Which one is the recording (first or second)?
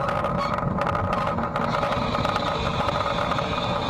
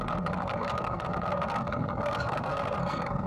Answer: first